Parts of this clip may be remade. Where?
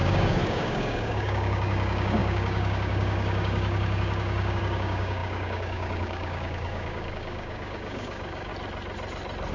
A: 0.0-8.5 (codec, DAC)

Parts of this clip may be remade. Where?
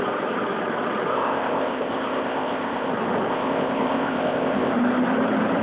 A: 1.1-2.9 (codec, ZipCodec); 3.3-4.7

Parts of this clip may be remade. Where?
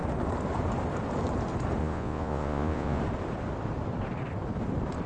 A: 1.8-3.0 (vocoder, Vocos)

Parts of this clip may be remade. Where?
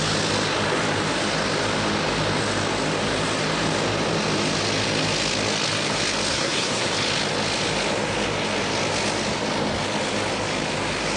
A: 6.3-6.9 (codec, SNAC)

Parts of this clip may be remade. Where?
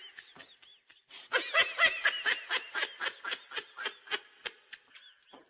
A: none